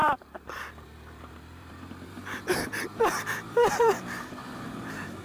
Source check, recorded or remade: remade